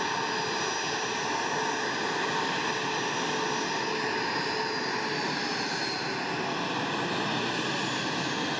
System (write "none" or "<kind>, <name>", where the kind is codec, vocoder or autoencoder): none